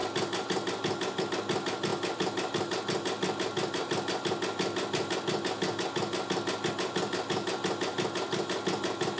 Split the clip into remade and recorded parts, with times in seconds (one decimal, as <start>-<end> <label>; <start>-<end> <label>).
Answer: 0.0-9.2 recorded